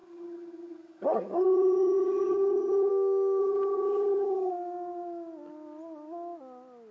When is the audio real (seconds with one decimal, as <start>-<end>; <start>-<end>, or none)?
2.9-3.4; 4.5-6.9